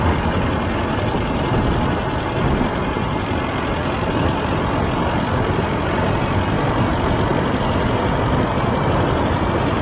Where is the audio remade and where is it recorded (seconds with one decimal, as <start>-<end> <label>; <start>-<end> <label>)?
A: 0.0-9.8 recorded